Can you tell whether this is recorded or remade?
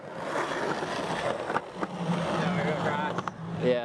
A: recorded